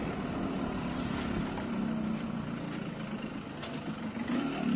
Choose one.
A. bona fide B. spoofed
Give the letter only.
A